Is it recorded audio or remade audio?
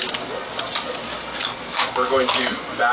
recorded